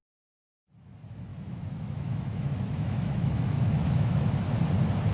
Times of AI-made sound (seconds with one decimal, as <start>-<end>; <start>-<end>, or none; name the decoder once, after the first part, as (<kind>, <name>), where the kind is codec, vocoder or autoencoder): 1.3-4.4 (autoencoder, DAC-VAE)